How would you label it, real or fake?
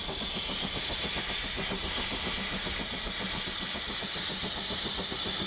real